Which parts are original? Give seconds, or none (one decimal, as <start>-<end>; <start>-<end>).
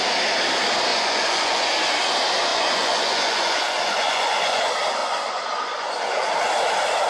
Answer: 0.0-0.9; 1.7-2.5; 4.6-5.0; 6.3-7.1